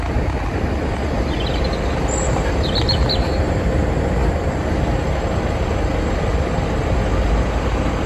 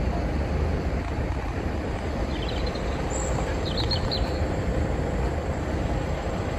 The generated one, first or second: second